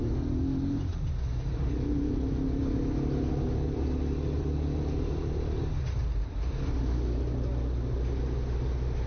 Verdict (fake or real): real